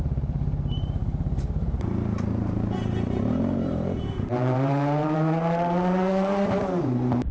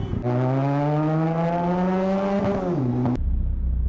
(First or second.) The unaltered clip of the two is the second